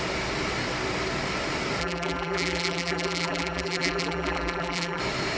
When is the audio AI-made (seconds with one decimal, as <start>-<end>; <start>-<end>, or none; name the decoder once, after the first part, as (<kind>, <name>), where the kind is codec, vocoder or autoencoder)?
1.8-5.0 (vocoder, BigVGAN v2)